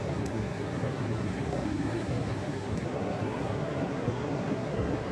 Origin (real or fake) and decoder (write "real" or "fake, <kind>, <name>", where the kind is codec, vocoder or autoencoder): fake, codec, SNAC